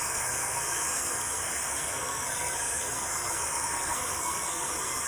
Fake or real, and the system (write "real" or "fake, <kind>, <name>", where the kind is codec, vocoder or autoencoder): fake, codec, SNAC